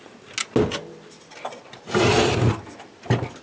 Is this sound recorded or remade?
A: recorded